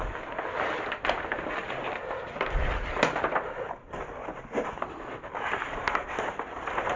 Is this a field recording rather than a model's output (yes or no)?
yes